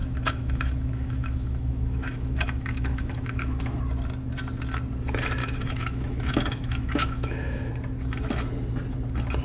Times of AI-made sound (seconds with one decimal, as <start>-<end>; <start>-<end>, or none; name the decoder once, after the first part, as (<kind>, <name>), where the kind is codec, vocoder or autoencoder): 0.0-3.8 (autoencoder, DAC-VAE); 5.4-7.7